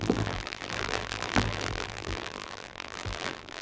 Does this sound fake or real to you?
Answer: fake